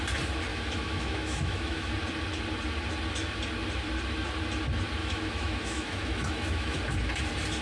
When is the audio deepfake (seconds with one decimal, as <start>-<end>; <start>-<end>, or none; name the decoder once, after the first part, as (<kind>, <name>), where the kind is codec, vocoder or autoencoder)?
0.5-1.9 (autoencoder, DAC-VAE); 5.0-6.8